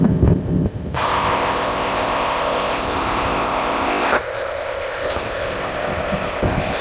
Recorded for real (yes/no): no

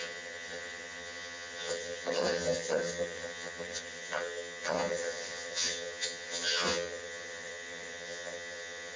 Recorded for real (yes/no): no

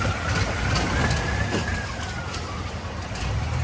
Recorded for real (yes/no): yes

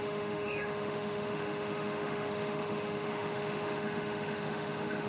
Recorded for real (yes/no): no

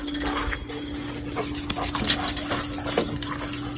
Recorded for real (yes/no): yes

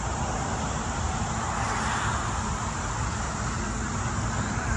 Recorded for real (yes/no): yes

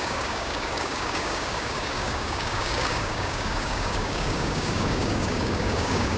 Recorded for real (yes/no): no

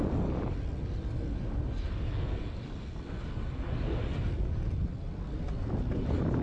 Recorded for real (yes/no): yes